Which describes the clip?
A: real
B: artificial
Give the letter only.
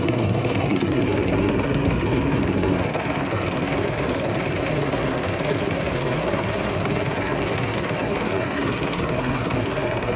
B